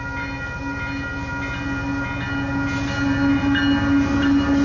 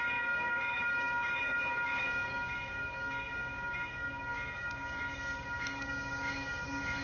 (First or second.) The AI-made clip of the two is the second